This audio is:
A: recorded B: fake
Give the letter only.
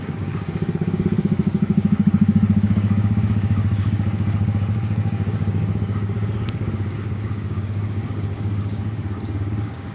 B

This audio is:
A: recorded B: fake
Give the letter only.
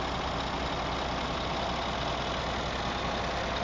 A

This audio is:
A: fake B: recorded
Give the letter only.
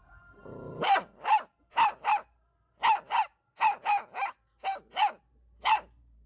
B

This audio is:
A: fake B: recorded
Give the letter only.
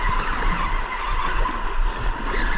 B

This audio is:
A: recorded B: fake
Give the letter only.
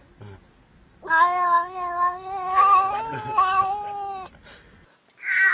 A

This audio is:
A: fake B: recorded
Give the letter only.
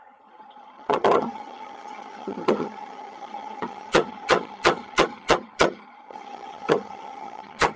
A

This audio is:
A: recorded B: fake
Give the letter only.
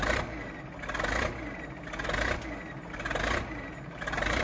A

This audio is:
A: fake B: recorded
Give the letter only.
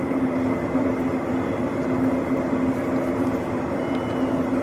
B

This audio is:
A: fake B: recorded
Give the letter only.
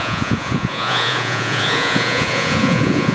A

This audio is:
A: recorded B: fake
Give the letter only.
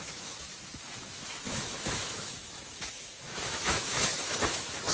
B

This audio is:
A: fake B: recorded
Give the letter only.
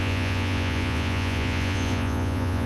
A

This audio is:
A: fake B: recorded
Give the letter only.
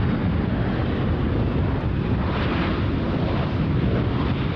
B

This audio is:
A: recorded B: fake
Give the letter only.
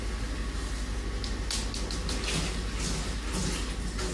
A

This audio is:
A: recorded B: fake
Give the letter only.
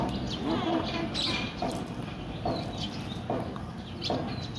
A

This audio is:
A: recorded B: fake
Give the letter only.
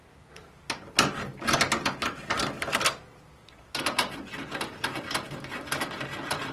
A